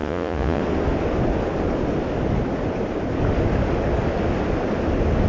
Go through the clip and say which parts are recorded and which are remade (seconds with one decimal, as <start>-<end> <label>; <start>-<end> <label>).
0.0-0.6 remade; 0.6-5.3 recorded